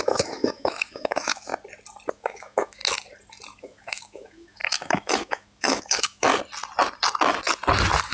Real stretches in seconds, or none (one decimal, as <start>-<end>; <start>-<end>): 1.5-2.1; 2.8-3.6; 6.3-8.1